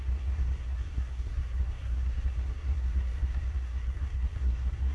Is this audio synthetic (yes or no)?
yes